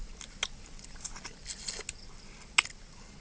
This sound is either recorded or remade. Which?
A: recorded